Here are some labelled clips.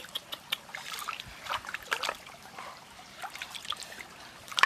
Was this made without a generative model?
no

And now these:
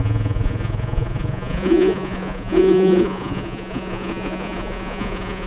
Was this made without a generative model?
no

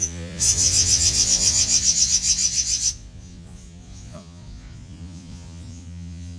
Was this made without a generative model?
no